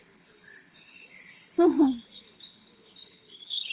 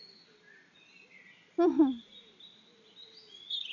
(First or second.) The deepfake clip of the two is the first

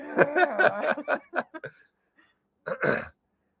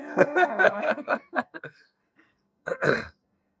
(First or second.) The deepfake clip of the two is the second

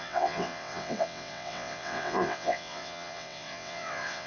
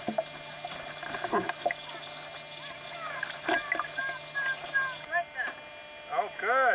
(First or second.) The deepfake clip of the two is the first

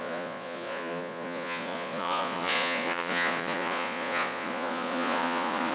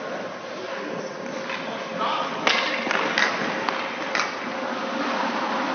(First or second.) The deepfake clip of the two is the first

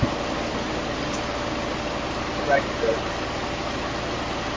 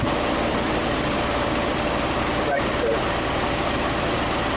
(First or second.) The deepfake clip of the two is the second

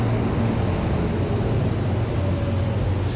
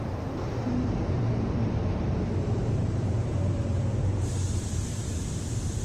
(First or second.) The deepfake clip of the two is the second